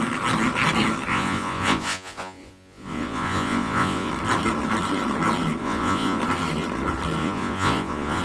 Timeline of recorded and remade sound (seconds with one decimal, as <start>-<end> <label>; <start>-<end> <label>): 0.0-1.1 recorded; 1.1-4.1 remade; 4.1-5.6 recorded; 5.6-6.2 remade; 6.2-7.2 recorded; 7.2-8.2 remade